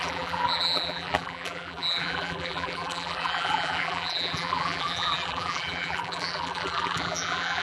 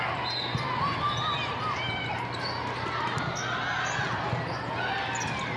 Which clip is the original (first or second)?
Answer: second